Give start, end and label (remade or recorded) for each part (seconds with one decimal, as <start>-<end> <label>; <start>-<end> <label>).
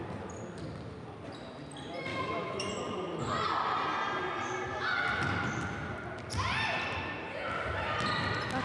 0.0-2.1 recorded; 2.1-2.7 remade; 2.7-8.6 recorded